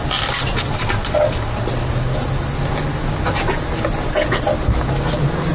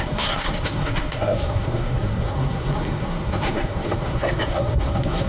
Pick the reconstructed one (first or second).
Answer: second